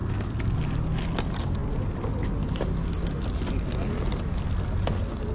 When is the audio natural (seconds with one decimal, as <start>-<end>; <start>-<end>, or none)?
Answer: 0.0-5.3